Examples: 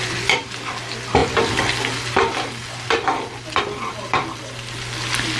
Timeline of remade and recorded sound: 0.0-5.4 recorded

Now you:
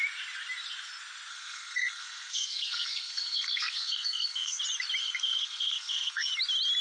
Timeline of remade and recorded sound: 0.0-1.3 recorded; 1.3-4.6 remade; 4.6-5.0 recorded; 5.0-6.3 remade; 6.3-6.8 recorded

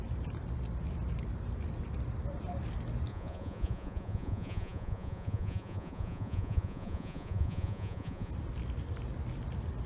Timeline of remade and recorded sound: 0.0-3.1 recorded; 3.1-8.3 remade; 8.3-9.9 recorded

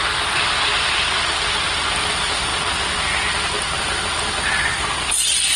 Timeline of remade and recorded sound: 0.0-5.6 recorded

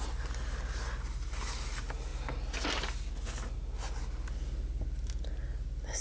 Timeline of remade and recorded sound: 0.0-6.0 recorded

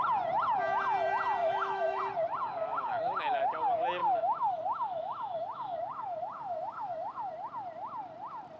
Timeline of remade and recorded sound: 0.0-1.4 recorded; 1.4-2.0 remade; 2.0-2.6 recorded; 2.6-3.4 remade; 3.4-4.0 recorded; 4.0-7.3 remade; 7.3-8.6 recorded